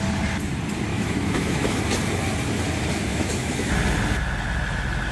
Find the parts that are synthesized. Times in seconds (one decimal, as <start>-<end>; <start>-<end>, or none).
0.9-1.8; 3.1-3.7